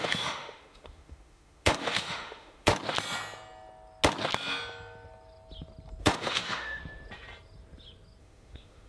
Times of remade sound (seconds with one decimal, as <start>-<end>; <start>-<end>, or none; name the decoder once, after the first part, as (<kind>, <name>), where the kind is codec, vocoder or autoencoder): 0.0-2.7 (autoencoder, DAC-VAE); 6.0-6.8; 8.2-8.9